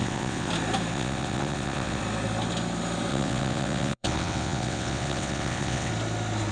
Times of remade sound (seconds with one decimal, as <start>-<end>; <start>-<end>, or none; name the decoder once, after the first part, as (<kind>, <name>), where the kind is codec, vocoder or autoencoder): 0.0-0.5 (vocoder, WaveNeXt); 0.9-2.0; 3.1-5.9